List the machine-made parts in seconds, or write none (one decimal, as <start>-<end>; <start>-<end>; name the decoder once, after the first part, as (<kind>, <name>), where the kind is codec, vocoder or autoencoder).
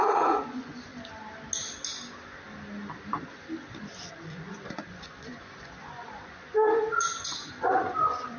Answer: 0.0-0.9 (vocoder, Vocos); 4.1-8.4